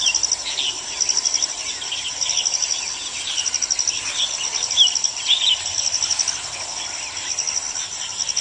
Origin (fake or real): real